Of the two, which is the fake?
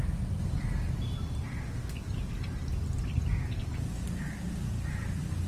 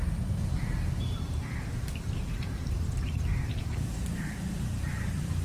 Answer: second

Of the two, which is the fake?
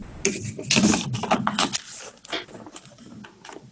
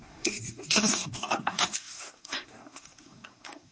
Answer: second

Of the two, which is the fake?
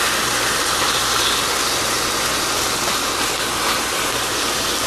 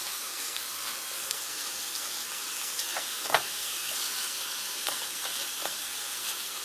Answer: second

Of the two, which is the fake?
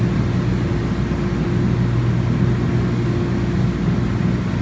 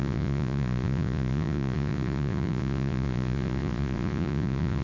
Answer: second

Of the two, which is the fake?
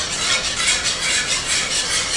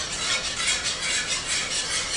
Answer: first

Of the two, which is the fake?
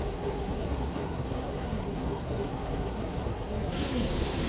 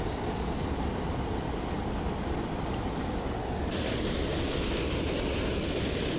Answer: first